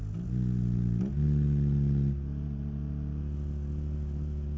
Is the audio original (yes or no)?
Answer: yes